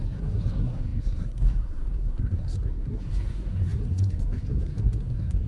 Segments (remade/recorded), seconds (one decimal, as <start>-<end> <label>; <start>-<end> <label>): 0.0-5.5 remade